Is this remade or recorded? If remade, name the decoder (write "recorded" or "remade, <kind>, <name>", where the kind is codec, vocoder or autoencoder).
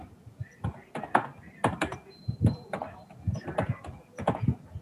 recorded